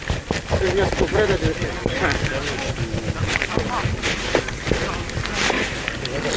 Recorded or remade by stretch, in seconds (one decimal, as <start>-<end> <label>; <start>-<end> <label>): 0.0-6.4 recorded